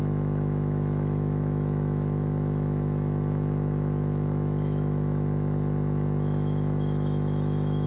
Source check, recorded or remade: remade